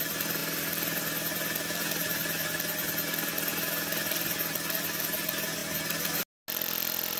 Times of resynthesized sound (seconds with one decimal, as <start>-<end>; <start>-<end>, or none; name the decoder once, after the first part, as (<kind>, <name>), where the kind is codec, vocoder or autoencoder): none